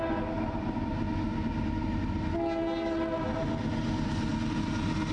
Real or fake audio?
real